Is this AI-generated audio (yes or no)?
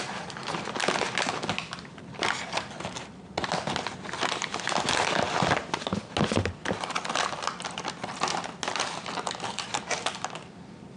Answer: no